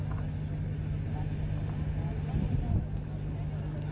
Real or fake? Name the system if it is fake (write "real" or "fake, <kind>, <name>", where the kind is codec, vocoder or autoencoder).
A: real